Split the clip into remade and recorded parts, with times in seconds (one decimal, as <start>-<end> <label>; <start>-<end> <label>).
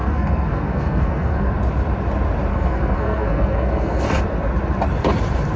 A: 0.0-1.5 remade; 1.5-2.5 recorded; 2.5-4.2 remade; 4.2-5.6 recorded